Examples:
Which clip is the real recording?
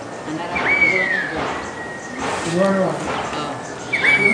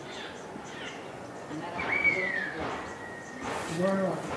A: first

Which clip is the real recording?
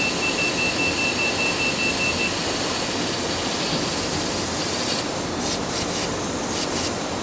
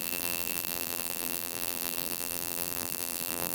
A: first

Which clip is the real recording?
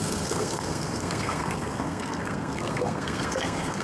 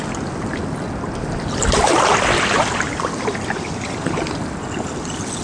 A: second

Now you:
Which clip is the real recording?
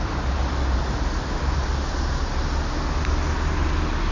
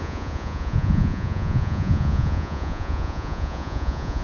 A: first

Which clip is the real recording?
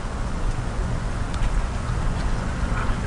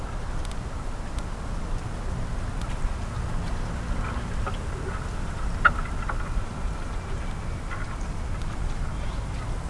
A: second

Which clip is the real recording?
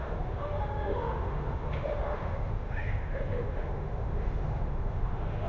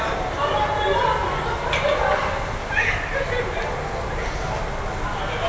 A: second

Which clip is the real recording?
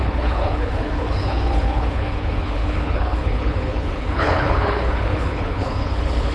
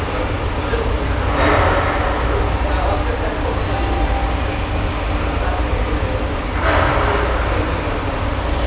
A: second